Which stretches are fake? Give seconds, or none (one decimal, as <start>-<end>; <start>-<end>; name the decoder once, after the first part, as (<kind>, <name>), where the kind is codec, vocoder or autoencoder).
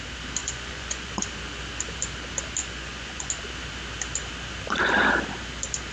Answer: 0.4-1.1 (vocoder, Vocos); 2.6-3.3